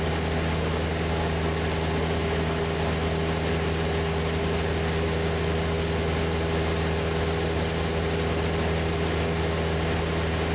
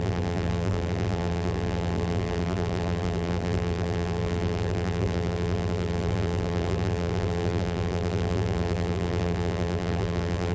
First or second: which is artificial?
second